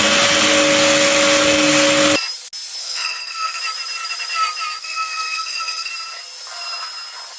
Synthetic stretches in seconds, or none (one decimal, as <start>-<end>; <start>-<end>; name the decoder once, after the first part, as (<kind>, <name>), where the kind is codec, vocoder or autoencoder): 2.8-3.6 (codec, SNAC); 4.8-5.9